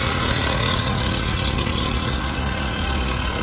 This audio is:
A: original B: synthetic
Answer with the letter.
B